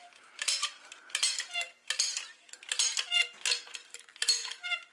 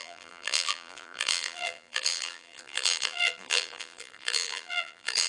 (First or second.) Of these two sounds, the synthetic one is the second